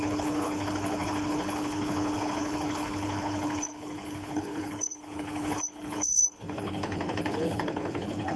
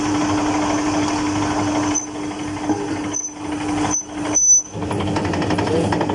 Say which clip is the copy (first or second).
first